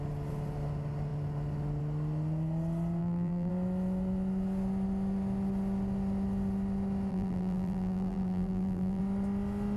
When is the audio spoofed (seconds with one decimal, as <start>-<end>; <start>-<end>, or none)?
3.0-3.5; 7.1-9.0